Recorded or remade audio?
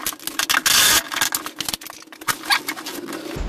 recorded